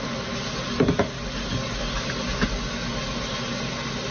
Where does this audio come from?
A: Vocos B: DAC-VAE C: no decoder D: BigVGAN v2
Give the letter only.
C